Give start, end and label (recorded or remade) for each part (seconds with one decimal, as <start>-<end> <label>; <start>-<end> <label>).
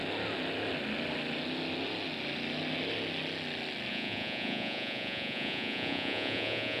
0.0-3.9 recorded; 3.9-6.8 remade